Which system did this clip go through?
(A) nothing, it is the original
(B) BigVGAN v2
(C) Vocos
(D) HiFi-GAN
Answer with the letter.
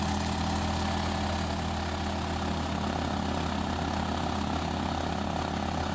A